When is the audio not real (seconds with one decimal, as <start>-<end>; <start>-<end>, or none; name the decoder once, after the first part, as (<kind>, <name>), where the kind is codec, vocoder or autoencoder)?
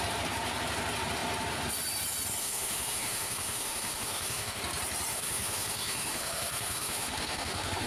2.4-4.6 (autoencoder, DAC-VAE); 5.1-7.9